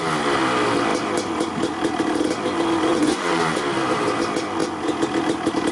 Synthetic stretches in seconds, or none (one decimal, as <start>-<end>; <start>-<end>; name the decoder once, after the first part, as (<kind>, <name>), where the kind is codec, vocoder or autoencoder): 2.9-3.6 (vocoder, Vocos)